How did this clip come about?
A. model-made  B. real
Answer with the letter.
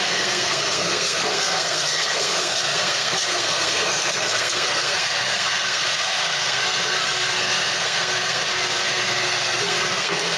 A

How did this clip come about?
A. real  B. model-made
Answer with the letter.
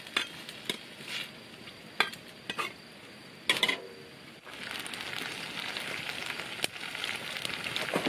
A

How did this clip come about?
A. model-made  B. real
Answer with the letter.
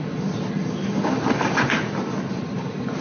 B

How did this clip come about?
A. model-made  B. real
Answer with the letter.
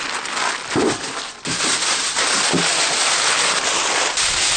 B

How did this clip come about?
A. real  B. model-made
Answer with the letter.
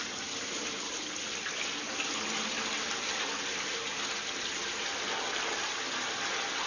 A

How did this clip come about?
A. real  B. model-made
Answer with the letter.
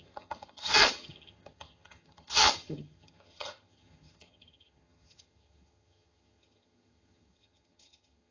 B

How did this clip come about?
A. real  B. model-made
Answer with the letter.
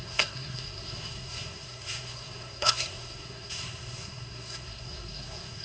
B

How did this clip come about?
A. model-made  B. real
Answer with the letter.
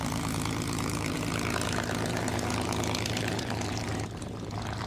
A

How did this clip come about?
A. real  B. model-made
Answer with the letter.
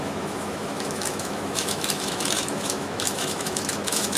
B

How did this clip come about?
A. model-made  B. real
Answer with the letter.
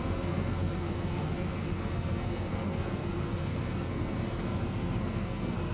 A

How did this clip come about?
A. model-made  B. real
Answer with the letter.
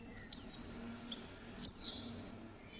B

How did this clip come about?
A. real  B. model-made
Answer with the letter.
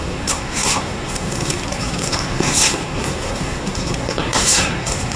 B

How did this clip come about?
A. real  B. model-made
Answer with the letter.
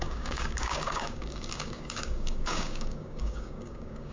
B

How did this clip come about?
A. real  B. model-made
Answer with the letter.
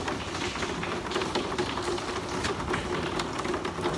B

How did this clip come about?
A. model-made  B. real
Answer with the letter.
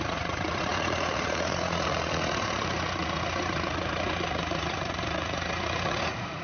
A